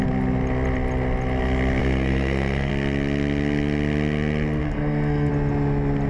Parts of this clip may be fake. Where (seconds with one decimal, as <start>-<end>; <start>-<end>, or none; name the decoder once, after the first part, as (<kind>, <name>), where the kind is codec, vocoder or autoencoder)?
1.8-2.7 (codec, SNAC); 4.6-5.3